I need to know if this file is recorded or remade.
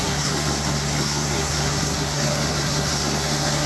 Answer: remade